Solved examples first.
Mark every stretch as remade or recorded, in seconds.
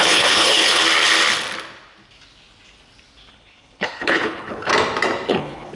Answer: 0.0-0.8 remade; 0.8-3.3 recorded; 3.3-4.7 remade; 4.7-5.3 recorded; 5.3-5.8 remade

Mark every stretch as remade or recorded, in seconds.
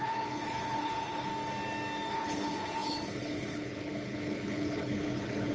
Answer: 0.0-1.3 remade; 1.3-2.1 recorded; 2.1-5.5 remade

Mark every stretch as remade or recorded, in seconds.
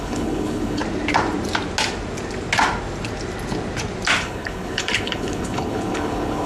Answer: 0.0-0.8 remade; 0.8-4.2 recorded; 4.2-6.5 remade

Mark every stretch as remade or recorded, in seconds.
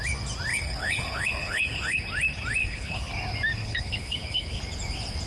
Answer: 0.0-0.5 recorded; 0.5-2.0 remade; 2.0-2.6 recorded; 2.6-3.1 remade; 3.1-3.6 recorded; 3.6-4.6 remade; 4.6-5.3 recorded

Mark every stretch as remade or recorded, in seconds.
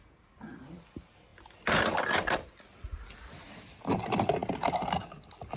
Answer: 0.0-5.6 recorded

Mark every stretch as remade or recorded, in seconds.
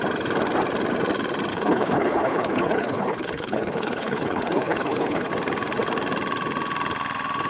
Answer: 0.0-1.5 recorded; 1.5-5.3 remade; 5.3-7.5 recorded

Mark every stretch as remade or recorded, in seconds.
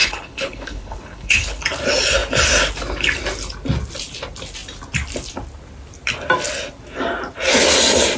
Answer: 0.0-1.6 remade; 1.6-8.2 recorded